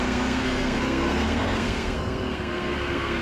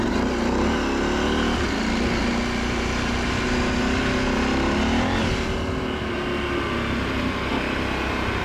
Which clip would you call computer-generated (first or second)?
first